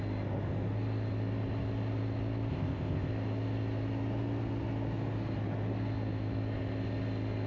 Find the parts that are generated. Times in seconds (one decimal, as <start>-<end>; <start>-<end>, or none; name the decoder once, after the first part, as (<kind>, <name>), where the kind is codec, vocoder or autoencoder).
2.5-3.1 (codec, ZipCodec)